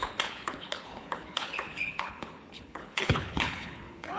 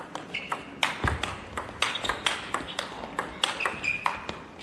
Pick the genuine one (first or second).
second